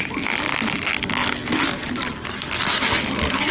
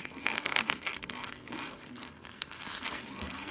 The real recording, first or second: first